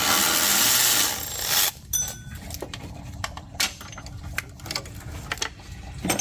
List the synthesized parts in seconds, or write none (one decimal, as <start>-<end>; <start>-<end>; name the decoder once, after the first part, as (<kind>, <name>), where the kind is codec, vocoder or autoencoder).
0.5-3.8 (vocoder, BigVGAN v2)